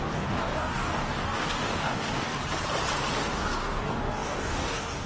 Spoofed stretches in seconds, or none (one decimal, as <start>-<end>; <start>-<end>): 0.0-2.4; 3.1-5.1